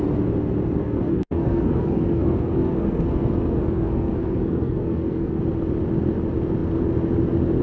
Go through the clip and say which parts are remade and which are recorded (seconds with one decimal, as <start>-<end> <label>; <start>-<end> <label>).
0.0-0.8 recorded; 0.8-5.4 remade; 5.4-7.6 recorded